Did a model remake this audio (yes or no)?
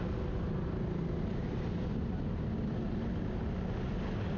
no